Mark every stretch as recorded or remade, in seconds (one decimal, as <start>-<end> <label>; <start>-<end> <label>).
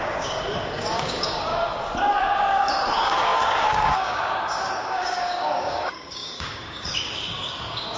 0.0-1.5 remade; 1.5-2.1 recorded; 2.1-8.0 remade